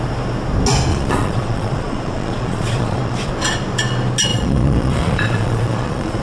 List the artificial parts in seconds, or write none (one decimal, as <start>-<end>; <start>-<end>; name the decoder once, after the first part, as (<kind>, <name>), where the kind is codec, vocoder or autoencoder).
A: 0.9-3.3 (vocoder, Vocos); 4.3-6.2